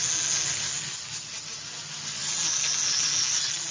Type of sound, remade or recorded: recorded